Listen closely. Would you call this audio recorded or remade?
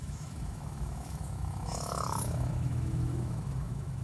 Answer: remade